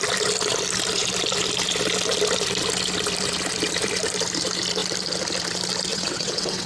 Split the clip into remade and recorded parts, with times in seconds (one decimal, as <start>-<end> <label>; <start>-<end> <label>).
0.0-5.9 recorded; 5.9-6.7 remade